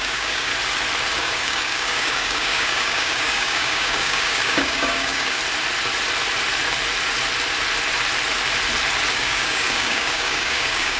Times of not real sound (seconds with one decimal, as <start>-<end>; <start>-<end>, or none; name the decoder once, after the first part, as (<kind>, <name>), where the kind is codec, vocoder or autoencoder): 0.0-0.5 (codec, DAC); 1.1-5.4; 9.1-11.0